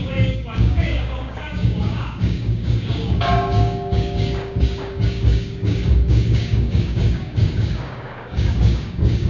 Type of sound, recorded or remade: remade